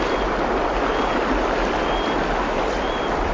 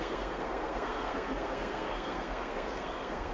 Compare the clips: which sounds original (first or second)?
first